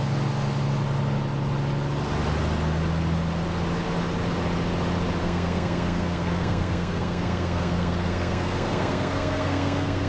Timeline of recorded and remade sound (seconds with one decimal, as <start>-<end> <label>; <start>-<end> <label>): 0.0-5.2 recorded; 5.2-10.1 remade